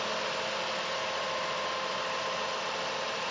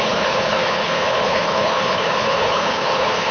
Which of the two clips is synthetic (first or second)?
second